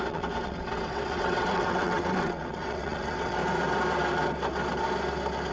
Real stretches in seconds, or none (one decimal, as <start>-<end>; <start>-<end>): 3.4-5.5